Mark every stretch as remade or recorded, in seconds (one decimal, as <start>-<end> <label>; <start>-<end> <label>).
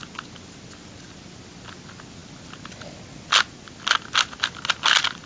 0.0-5.3 recorded